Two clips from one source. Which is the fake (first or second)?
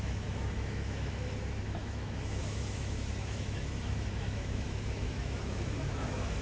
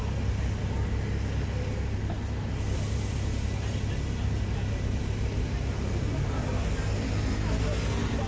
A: first